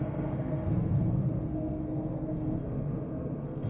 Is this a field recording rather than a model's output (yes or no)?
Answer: no